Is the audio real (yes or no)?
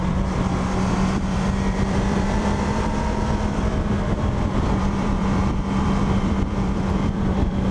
no